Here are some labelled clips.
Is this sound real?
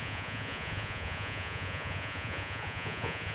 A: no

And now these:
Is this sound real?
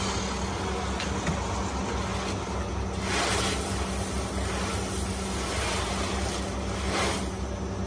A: yes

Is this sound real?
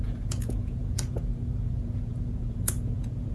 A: no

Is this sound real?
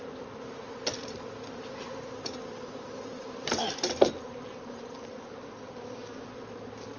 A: yes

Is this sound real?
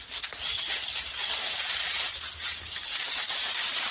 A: yes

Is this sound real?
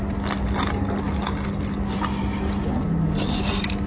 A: yes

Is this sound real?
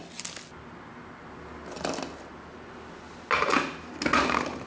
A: yes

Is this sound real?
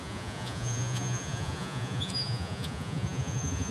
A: no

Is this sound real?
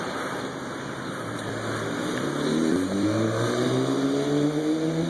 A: yes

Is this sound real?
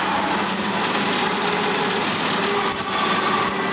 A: yes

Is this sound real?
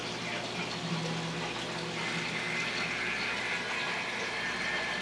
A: yes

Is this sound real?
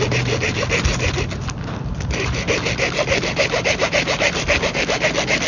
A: yes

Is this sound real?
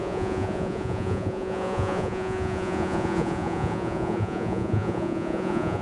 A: no